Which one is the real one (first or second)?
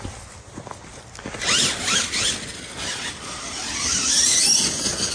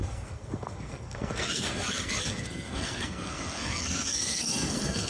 first